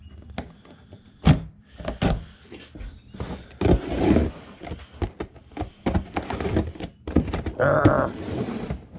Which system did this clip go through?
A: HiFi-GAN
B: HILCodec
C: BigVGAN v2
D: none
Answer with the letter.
D